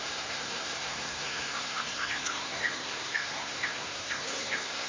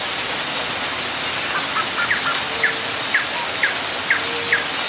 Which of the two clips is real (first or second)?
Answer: second